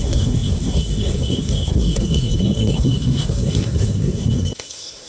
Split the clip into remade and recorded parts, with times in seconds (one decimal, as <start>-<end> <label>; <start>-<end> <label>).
0.0-5.1 remade